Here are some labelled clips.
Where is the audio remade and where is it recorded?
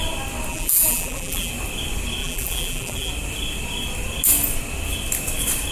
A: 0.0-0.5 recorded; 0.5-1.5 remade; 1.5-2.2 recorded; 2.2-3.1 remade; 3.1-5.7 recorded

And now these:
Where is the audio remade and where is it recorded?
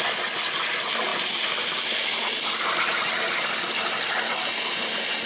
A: 0.0-5.3 recorded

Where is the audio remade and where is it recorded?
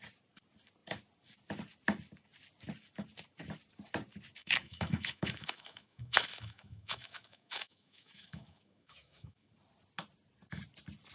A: 0.0-4.4 recorded; 4.4-9.5 remade; 9.5-11.1 recorded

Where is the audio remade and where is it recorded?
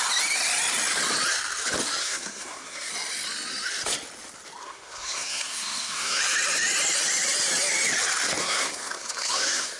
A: 0.0-2.0 recorded; 2.0-2.9 remade; 2.9-4.6 recorded; 4.6-6.2 remade; 6.2-8.4 recorded; 8.4-9.8 remade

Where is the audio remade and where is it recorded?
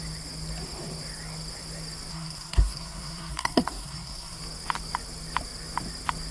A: 0.0-2.1 recorded; 2.1-4.4 remade; 4.4-6.3 recorded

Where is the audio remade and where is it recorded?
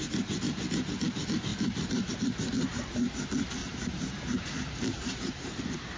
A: 0.0-1.5 recorded; 1.5-2.1 remade; 2.1-3.6 recorded; 3.6-5.6 remade; 5.6-6.0 recorded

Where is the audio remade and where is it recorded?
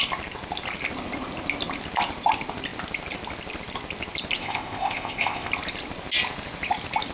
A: 0.0-4.4 recorded; 4.4-5.5 remade; 5.5-7.1 recorded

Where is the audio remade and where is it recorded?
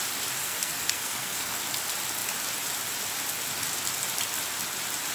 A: 0.0-0.4 recorded; 0.4-1.6 remade; 1.6-5.1 recorded